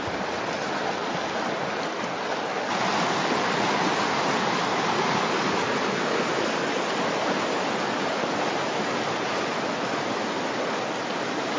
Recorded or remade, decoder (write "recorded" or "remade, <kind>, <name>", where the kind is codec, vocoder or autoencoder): recorded